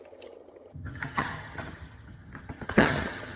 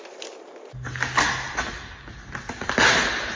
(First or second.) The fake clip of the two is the first